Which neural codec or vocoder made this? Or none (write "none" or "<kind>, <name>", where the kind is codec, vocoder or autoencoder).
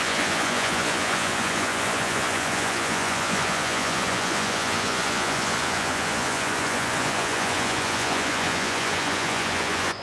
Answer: vocoder, Vocos